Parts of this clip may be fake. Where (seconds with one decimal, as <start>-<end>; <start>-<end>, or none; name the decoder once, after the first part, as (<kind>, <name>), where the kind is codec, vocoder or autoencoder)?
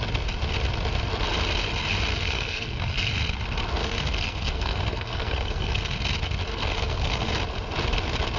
2.1-3.1 (codec, SNAC); 3.8-6.0; 6.5-7.3